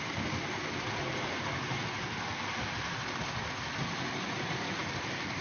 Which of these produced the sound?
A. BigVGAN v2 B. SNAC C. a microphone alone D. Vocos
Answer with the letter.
C